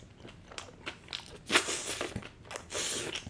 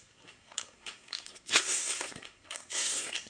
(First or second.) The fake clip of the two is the second